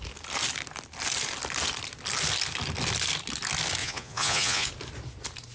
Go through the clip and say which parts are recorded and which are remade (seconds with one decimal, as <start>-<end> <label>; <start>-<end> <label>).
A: 0.0-3.8 recorded; 3.8-4.7 remade; 4.7-5.5 recorded